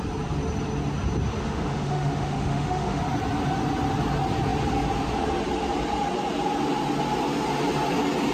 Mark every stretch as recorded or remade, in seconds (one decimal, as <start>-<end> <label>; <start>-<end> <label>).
0.0-1.4 recorded; 1.4-3.0 remade; 3.0-8.3 recorded